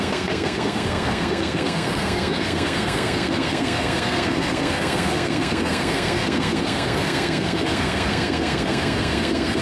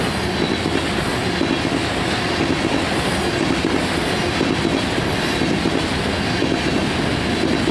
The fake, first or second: first